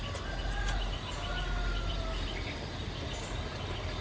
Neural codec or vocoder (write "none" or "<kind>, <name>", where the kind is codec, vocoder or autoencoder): none